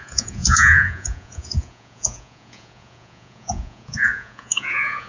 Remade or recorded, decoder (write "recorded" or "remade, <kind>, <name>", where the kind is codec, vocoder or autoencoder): remade, vocoder, Vocos